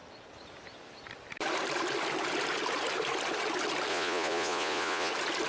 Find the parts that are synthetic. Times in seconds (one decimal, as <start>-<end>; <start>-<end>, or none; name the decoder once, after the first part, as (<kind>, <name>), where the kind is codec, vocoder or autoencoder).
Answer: 3.9-5.1 (vocoder, Vocos)

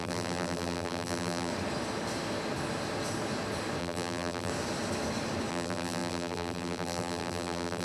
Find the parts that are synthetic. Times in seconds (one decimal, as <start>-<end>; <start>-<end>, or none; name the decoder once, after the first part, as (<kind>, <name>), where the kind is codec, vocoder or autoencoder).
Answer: 0.0-1.5 (vocoder, BigVGAN v2); 3.8-4.5; 5.5-7.8